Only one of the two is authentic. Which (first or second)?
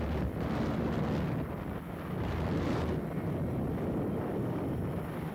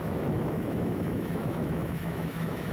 first